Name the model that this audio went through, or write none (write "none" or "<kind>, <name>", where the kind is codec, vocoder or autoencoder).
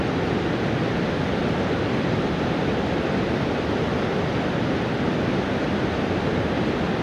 none